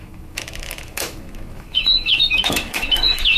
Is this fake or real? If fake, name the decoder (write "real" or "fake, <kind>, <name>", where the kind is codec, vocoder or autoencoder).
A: fake, autoencoder, DAC-VAE